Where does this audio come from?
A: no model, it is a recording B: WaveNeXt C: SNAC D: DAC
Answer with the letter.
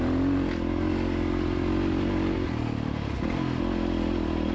A